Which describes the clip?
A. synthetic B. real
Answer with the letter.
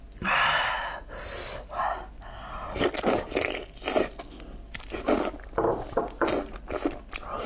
B